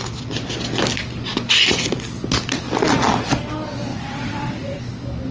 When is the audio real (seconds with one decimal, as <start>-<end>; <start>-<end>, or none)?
0.0-3.9; 4.8-5.3